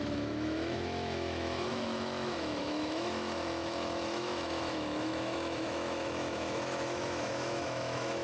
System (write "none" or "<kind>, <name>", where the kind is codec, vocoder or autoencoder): autoencoder, DAC-VAE